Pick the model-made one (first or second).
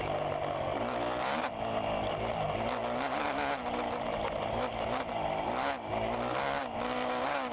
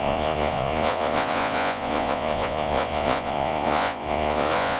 second